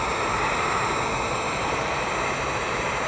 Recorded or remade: remade